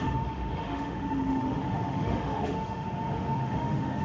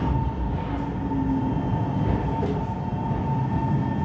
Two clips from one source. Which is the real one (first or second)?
second